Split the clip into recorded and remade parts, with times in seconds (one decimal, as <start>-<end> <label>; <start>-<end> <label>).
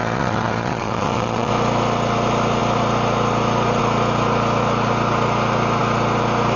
0.0-1.5 remade; 1.5-6.6 recorded